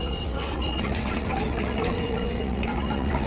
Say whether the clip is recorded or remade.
remade